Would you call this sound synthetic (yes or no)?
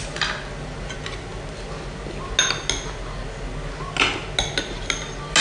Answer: no